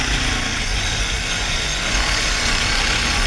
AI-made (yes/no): yes